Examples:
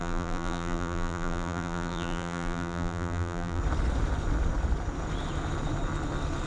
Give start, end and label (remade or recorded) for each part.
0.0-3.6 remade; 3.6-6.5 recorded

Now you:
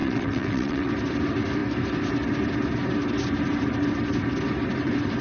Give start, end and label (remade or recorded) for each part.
0.0-0.9 remade; 0.9-5.2 recorded

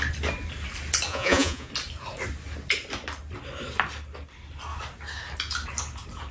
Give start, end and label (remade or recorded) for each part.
0.0-1.1 recorded; 1.1-1.7 remade; 1.7-6.3 recorded